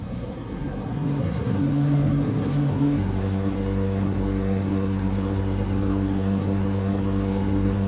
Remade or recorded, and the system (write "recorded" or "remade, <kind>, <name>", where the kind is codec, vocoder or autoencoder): remade, codec, SNAC